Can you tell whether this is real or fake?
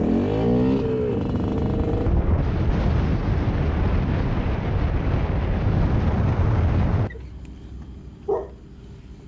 real